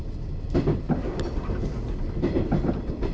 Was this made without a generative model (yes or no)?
yes